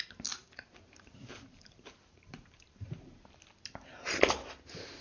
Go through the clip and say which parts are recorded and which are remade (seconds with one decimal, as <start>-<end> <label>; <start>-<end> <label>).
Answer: 0.0-0.4 recorded; 0.4-3.2 remade; 3.2-5.0 recorded